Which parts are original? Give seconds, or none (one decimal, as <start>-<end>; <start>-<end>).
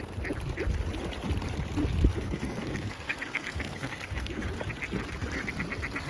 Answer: 0.0-2.1; 4.4-6.1